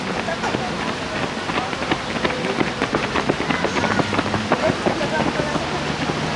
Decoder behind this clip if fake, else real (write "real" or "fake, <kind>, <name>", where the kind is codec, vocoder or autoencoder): real